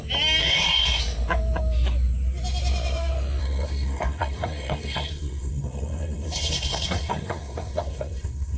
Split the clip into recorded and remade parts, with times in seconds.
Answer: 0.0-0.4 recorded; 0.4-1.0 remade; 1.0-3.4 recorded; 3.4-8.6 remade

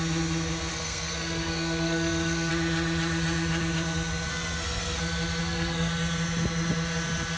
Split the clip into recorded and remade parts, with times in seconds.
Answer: 0.0-0.7 recorded; 0.7-2.5 remade; 2.5-4.3 recorded; 4.3-5.0 remade; 5.0-5.4 recorded; 5.4-5.9 remade; 5.9-7.4 recorded

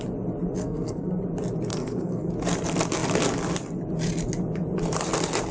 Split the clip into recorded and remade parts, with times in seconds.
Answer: 0.0-0.6 recorded; 0.6-1.2 remade; 1.2-1.7 recorded; 1.7-2.3 remade; 2.3-5.5 recorded

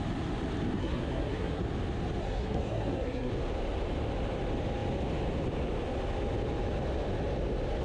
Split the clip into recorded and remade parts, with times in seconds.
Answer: 0.0-0.8 recorded; 0.8-1.6 remade; 1.6-2.2 recorded; 2.2-3.3 remade; 3.3-7.8 recorded